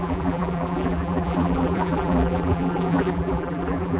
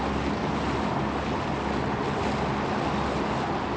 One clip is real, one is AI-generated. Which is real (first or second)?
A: second